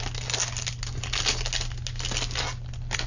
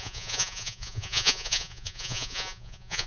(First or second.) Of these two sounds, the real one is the first